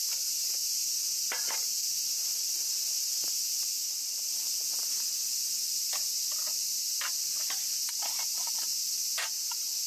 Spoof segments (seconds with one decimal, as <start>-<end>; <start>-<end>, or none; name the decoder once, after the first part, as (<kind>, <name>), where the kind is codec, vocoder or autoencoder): none